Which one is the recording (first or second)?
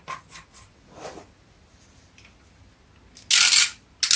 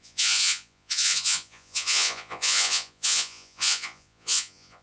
first